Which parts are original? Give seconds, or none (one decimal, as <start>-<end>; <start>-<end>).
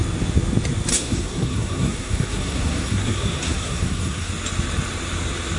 0.0-0.9; 4.3-5.6